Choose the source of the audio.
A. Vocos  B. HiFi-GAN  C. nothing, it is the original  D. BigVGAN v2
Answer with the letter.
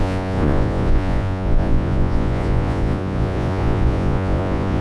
A